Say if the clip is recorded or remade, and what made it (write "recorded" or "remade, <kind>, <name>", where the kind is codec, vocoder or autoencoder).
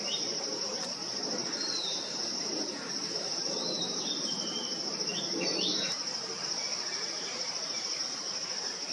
remade, vocoder, BigVGAN v2